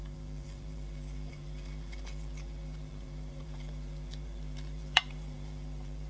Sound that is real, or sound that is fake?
fake